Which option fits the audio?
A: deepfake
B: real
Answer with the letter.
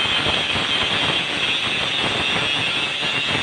B